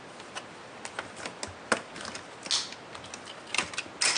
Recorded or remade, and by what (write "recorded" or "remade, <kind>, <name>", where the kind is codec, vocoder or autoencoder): recorded